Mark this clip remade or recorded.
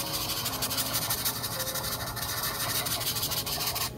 recorded